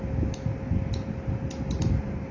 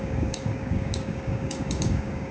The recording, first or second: first